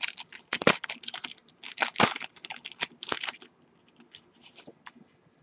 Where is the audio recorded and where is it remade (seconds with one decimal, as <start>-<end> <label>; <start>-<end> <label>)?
0.0-1.4 remade; 1.4-4.6 recorded; 4.6-5.4 remade